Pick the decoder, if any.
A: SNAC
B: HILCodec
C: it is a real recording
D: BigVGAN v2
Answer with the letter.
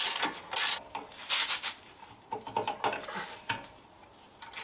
C